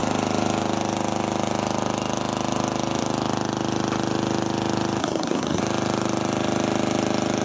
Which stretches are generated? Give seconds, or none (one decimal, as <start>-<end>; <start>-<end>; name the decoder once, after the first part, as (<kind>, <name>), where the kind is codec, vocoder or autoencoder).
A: 5.0-5.6 (codec, SNAC)